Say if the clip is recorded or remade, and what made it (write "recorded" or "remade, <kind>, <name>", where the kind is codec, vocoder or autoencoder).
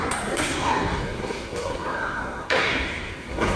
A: remade, codec, SNAC